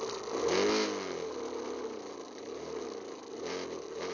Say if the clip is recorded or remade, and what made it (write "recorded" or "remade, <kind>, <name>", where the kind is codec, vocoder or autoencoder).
recorded